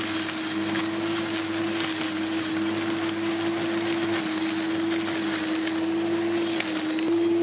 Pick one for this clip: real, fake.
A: real